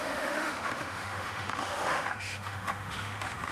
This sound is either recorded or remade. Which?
remade